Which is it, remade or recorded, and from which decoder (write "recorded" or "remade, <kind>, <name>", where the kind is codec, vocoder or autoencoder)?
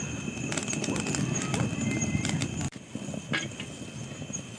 recorded